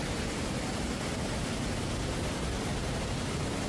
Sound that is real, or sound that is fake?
real